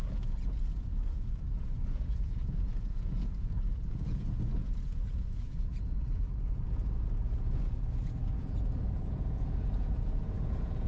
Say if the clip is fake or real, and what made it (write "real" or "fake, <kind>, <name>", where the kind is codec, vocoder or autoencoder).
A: fake, vocoder, Vocos